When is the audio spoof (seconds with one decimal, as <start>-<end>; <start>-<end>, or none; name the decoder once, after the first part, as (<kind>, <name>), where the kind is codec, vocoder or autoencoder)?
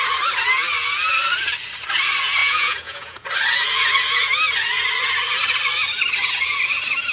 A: 2.4-3.2 (vocoder, Vocos)